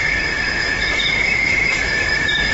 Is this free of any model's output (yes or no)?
no